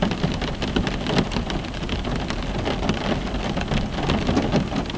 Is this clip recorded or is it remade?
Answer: recorded